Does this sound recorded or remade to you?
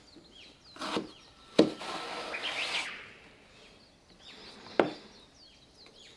recorded